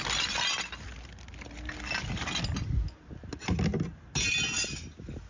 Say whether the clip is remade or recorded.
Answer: recorded